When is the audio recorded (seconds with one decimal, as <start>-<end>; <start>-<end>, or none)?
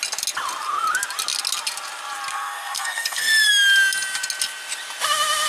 0.0-2.3; 3.5-5.5